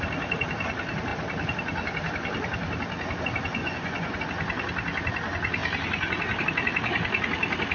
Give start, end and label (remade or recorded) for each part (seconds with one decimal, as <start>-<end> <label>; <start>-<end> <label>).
0.0-3.6 recorded; 3.6-4.2 remade; 4.2-7.7 recorded

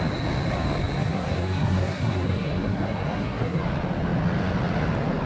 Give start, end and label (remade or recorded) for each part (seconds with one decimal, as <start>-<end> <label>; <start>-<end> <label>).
0.0-1.0 recorded; 1.0-3.6 remade; 3.6-5.3 recorded

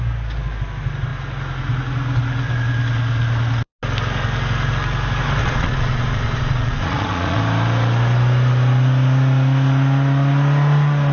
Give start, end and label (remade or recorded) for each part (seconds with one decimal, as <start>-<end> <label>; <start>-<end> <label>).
0.0-5.4 recorded; 5.4-7.4 remade; 7.4-11.1 recorded

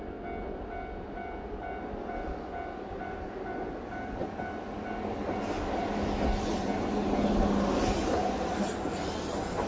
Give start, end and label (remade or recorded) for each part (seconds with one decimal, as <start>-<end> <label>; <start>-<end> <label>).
0.0-9.7 recorded

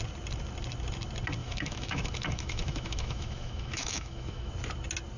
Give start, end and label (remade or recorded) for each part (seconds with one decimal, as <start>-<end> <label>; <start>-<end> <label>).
0.0-1.4 recorded; 1.4-4.5 remade; 4.5-5.2 recorded